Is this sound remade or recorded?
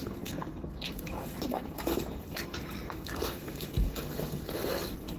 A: remade